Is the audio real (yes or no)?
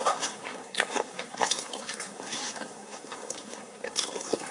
no